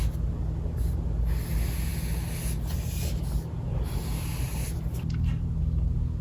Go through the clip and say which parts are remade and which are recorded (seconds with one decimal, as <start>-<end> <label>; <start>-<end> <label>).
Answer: 0.0-6.2 recorded